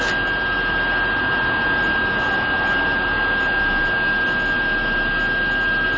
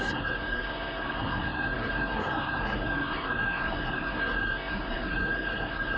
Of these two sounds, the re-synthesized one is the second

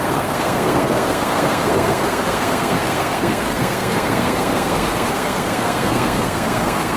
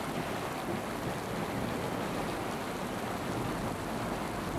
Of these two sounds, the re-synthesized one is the first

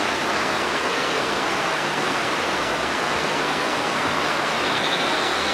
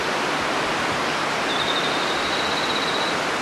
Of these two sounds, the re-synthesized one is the first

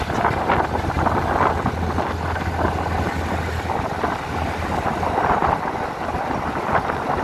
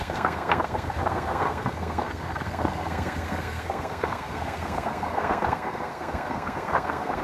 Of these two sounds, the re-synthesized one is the second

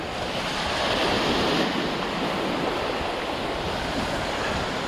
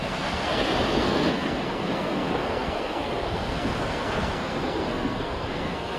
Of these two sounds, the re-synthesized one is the second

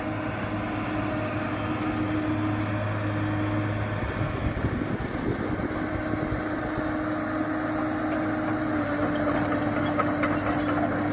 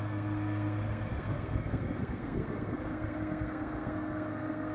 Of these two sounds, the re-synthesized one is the second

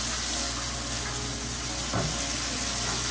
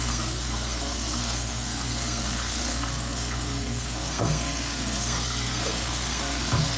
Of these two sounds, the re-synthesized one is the second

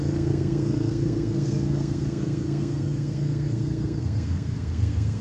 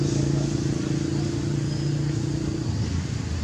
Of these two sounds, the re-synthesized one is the first